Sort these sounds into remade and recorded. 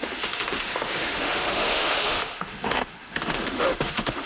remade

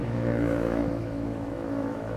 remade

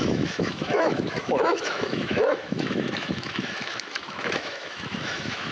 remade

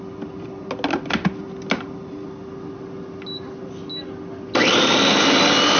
recorded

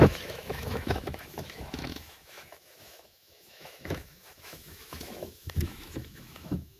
remade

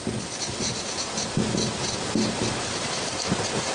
recorded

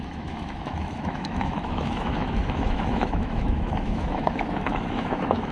remade